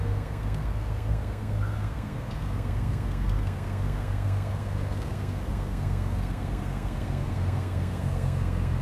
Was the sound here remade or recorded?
remade